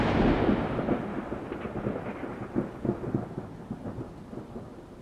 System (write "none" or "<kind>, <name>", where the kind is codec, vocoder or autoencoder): none